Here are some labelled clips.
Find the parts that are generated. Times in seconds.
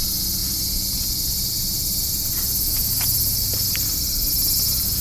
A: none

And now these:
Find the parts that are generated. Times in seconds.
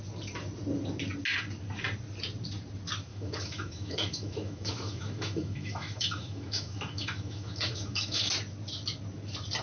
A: 3.1-8.3 (autoencoder, DAC-VAE)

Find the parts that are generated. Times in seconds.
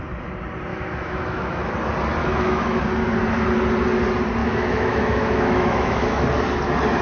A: 0.7-1.7 (autoencoder, DAC-VAE); 2.2-2.8; 4.4-6.2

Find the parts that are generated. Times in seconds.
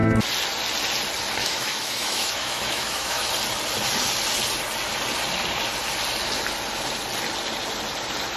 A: 1.4-3.3 (autoencoder, DAC-VAE)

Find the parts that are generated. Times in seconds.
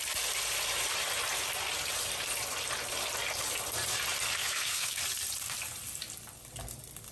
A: 4.4-5.0 (autoencoder, DAC-VAE)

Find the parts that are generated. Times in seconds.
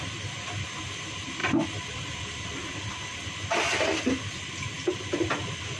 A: none